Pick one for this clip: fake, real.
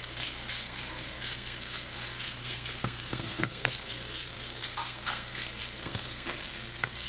fake